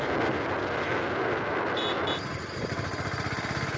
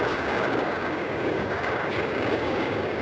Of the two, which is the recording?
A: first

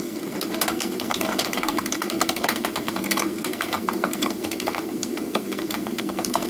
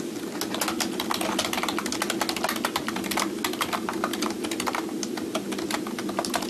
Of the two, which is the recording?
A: second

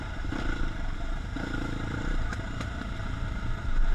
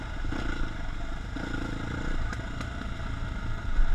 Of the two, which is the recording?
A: second